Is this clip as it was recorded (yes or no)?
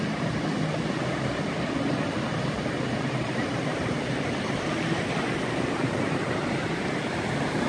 yes